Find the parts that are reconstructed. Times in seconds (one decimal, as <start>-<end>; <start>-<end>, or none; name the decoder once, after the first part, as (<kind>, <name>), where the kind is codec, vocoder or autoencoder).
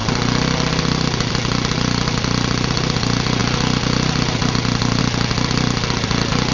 none